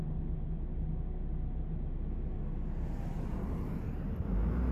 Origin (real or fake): real